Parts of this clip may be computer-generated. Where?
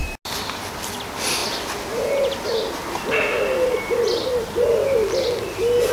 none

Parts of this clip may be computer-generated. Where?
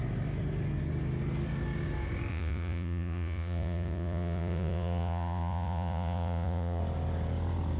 2.3-6.8 (vocoder, Vocos)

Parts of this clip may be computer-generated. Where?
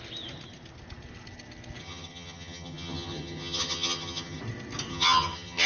1.8-4.4 (vocoder, HiFi-GAN); 4.9-5.7